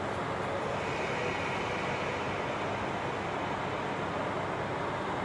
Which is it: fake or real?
real